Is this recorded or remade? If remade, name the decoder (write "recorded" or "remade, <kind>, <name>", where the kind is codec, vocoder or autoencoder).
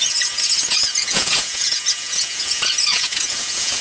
remade, vocoder, Vocos